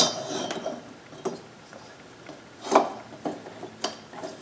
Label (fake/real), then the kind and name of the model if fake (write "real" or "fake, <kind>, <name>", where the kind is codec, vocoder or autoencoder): real